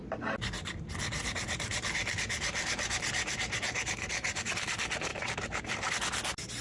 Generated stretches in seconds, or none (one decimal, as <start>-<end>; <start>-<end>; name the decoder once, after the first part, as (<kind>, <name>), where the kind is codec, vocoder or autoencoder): 1.2-4.5 (vocoder, BigVGAN v2); 5.1-5.9